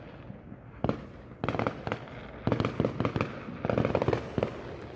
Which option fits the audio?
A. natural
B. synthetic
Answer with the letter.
A